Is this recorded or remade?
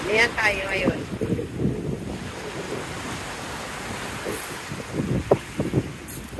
recorded